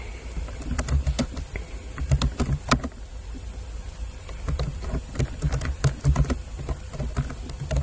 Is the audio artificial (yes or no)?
no